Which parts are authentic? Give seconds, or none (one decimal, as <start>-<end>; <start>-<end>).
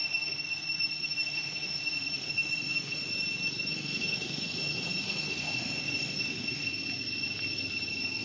3.0-3.7; 6.7-8.2